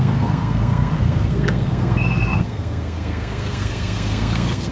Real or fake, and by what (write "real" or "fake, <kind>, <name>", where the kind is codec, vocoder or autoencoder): fake, codec, SNAC